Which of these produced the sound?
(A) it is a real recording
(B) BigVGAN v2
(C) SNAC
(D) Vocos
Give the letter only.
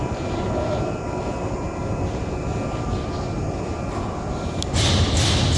A